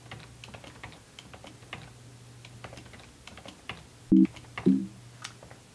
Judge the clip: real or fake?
real